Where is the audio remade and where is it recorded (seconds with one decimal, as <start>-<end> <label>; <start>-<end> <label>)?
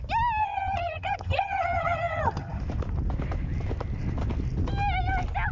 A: 0.0-0.4 recorded; 0.4-2.6 remade; 2.6-5.5 recorded